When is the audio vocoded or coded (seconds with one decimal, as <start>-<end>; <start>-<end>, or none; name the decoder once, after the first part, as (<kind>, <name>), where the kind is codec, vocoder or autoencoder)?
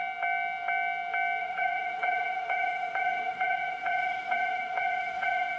1.4-5.6 (vocoder, Vocos)